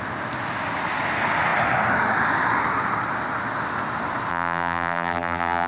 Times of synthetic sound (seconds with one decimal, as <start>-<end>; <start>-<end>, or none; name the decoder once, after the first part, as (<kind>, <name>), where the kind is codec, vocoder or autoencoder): 4.3-5.7 (vocoder, BigVGAN v2)